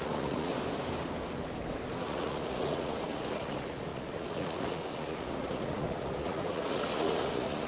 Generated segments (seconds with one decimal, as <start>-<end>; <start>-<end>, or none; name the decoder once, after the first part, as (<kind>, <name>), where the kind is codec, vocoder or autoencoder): 0.0-0.5 (vocoder, Vocos); 2.0-7.7